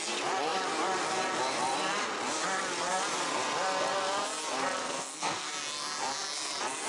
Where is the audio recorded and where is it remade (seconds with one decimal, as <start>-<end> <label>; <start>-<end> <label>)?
0.0-4.8 recorded; 4.8-5.5 remade; 5.5-6.9 recorded